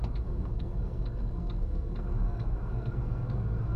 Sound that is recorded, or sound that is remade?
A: remade